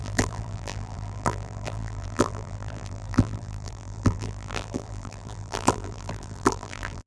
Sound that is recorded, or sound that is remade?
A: remade